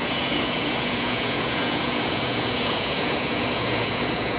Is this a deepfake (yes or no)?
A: yes